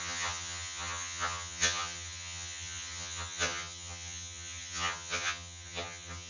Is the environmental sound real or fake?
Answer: fake